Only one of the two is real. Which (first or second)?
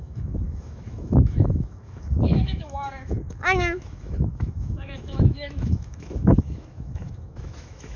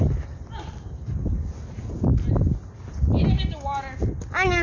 second